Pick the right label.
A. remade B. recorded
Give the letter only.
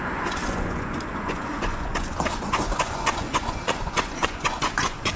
A